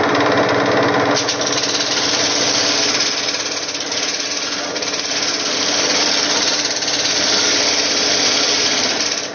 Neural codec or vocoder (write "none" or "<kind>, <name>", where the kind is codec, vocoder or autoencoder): none